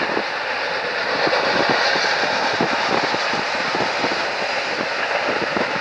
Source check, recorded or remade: recorded